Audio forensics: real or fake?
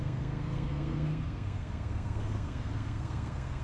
fake